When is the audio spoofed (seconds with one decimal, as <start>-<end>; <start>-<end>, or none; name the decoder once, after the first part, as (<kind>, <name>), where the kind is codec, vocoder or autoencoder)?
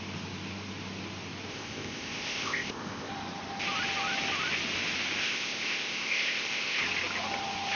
1.5-3.1 (codec, ZipCodec); 5.2-6.8